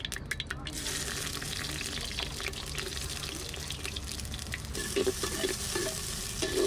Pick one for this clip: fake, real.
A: real